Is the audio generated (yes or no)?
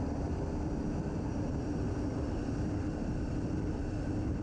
yes